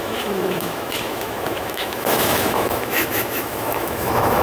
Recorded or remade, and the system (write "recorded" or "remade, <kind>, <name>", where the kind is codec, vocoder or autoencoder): remade, autoencoder, DAC-VAE